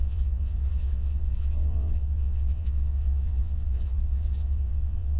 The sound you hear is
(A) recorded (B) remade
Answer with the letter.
B